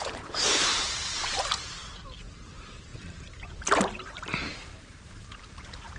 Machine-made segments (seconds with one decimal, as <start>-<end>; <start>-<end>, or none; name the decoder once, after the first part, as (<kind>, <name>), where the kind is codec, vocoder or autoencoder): 0.0-1.8 (vocoder, BigVGAN v2); 2.5-6.0